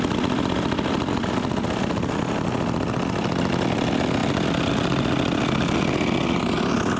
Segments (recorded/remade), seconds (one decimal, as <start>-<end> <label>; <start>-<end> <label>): 0.0-7.0 recorded